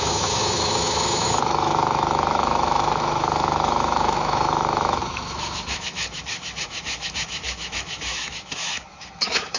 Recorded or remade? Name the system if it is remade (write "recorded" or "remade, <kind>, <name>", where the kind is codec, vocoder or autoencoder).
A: remade, autoencoder, DAC-VAE